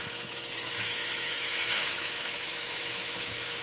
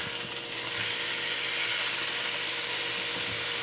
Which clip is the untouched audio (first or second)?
second